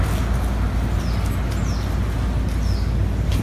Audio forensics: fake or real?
real